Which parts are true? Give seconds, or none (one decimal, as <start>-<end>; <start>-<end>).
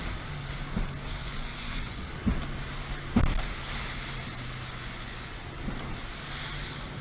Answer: 0.0-1.2; 2.0-4.7; 5.4-7.0